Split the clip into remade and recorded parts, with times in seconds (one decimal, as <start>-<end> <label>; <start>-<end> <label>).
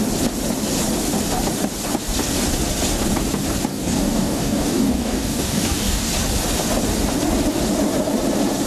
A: 0.0-3.7 recorded; 3.7-6.1 remade; 6.1-8.7 recorded